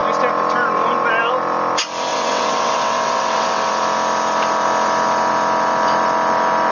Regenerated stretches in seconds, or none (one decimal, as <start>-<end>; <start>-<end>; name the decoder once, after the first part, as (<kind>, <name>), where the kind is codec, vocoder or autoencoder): 2.1-3.7 (vocoder, WaveNeXt)